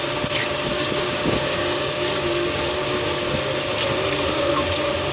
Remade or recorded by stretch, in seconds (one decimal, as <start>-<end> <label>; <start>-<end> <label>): 0.0-0.7 recorded; 0.7-2.7 remade; 2.7-5.1 recorded